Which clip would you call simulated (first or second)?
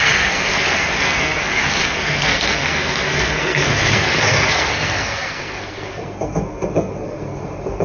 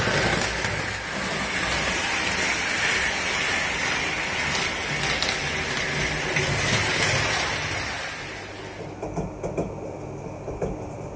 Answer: first